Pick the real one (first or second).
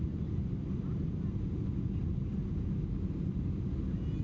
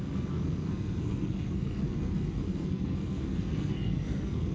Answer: first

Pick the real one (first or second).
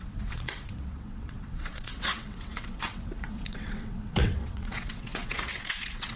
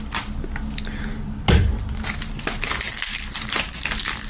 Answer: second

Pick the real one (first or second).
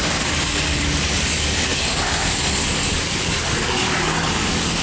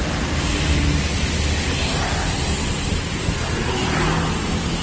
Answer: second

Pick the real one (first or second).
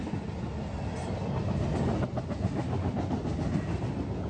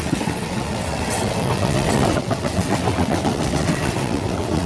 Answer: first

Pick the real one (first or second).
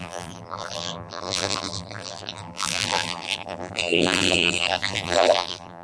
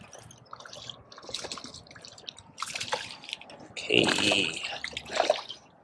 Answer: second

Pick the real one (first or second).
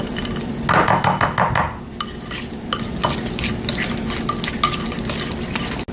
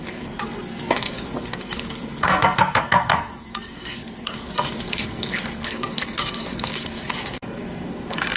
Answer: first